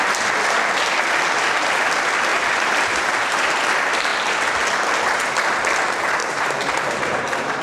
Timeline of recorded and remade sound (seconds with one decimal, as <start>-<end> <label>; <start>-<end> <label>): 0.0-2.3 recorded; 2.3-3.4 remade; 3.4-6.2 recorded; 6.2-7.6 remade